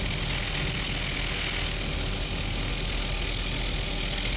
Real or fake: real